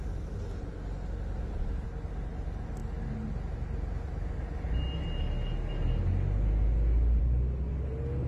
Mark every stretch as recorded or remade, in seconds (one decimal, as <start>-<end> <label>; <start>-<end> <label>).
0.0-8.3 recorded